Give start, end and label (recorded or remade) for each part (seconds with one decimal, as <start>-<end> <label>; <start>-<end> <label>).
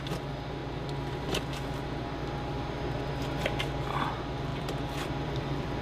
0.0-4.5 recorded; 4.5-5.8 remade